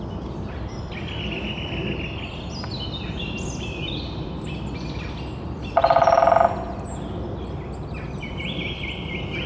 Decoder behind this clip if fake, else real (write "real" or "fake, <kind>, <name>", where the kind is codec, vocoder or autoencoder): real